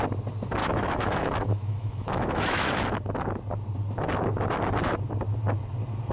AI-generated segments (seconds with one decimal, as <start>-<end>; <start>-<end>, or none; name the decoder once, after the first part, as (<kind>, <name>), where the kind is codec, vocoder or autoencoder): 0.6-3.0 (autoencoder, DAC-VAE)